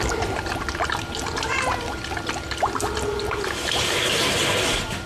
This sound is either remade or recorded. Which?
recorded